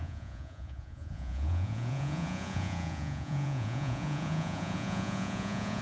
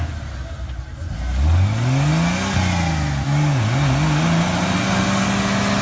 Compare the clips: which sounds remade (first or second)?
first